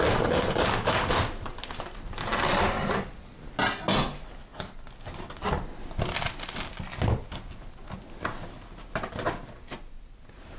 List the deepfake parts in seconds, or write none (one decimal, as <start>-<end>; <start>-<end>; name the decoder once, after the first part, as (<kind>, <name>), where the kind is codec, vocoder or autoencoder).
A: none